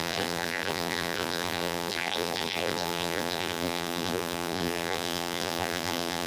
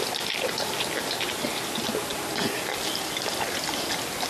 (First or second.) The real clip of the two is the second